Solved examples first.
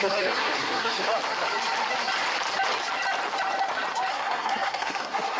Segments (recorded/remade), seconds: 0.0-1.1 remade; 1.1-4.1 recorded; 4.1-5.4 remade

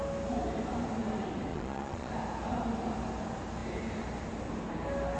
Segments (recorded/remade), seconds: 0.0-1.5 recorded; 1.5-2.1 remade; 2.1-5.2 recorded

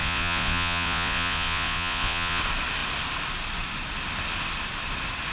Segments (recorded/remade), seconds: 0.0-2.4 remade; 2.4-5.3 recorded